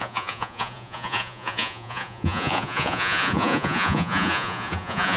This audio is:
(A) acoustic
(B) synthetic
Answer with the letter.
B